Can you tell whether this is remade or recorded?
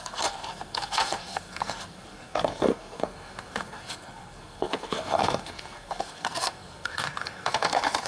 remade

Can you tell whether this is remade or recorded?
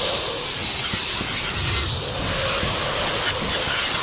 recorded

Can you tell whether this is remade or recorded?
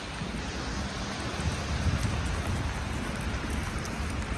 recorded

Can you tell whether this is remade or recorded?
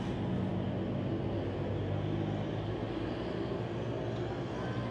recorded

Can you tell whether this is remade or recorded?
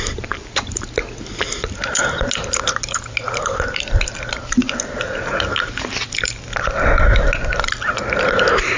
recorded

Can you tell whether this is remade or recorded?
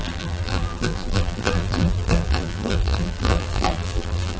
remade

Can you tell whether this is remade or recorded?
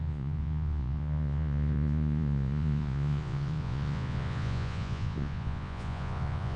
remade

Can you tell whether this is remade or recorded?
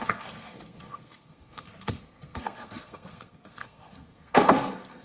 remade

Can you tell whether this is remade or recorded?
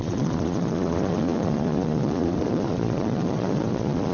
remade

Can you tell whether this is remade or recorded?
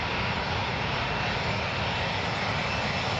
recorded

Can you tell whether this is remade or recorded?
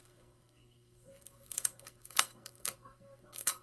remade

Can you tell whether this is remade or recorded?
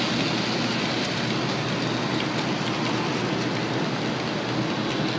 recorded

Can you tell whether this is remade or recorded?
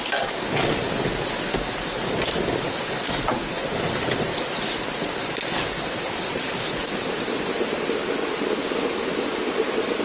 recorded